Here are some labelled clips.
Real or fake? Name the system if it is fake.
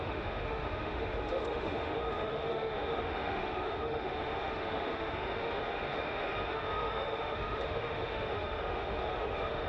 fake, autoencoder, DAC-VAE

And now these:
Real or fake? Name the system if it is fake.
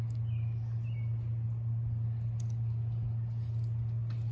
real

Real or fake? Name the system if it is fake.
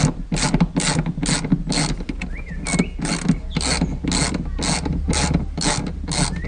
real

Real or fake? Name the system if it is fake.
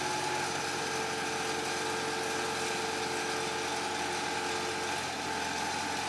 real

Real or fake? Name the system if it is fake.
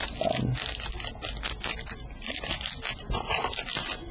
real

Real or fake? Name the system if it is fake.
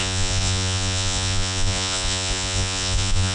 fake, vocoder, Vocos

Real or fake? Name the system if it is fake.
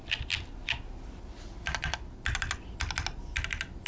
real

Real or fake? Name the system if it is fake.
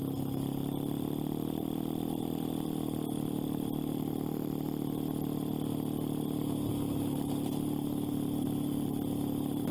real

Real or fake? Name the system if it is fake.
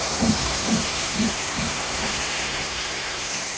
fake, codec, SNAC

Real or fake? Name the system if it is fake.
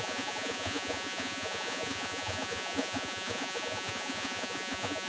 fake, vocoder, Vocos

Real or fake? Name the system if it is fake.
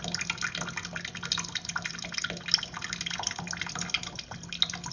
real